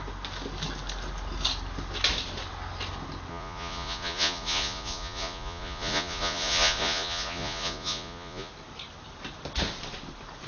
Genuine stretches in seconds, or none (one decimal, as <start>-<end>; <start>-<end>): 0.0-3.3; 8.5-10.5